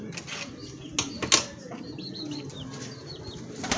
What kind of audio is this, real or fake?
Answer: real